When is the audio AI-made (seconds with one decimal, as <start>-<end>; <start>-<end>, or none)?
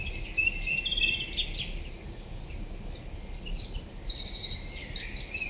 none